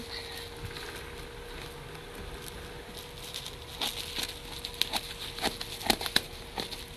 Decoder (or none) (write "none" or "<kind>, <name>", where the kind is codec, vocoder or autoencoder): none